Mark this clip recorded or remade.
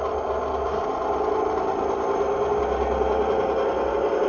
recorded